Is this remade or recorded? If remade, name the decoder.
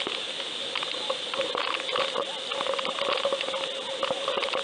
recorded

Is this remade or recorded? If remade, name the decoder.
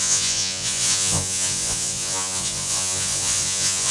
remade, vocoder, Vocos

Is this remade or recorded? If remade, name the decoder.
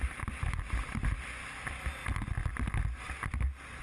recorded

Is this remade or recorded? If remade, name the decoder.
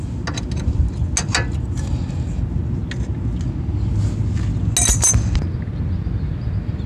recorded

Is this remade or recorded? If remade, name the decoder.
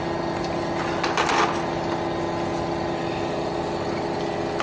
recorded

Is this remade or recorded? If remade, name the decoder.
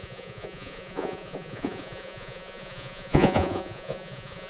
remade, vocoder, Vocos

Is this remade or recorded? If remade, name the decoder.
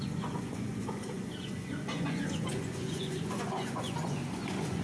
remade, vocoder, Vocos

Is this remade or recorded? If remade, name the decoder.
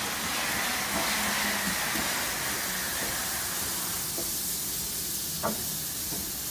recorded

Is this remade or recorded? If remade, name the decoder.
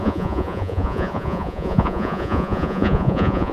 remade, vocoder, Vocos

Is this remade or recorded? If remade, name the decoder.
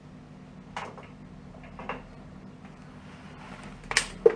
recorded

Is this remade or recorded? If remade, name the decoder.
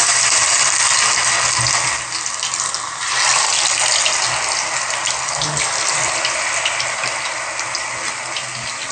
recorded